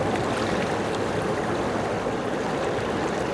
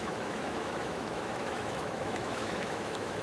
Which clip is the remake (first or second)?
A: second